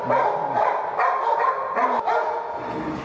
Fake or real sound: real